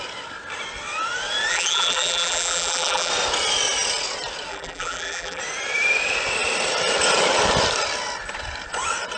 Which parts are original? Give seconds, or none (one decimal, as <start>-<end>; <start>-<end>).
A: 0.0-1.5; 3.1-4.5; 5.4-9.2